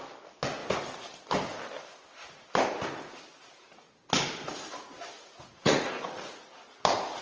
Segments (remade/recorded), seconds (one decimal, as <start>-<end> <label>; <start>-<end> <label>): 0.0-5.2 recorded; 5.2-5.9 remade; 5.9-7.2 recorded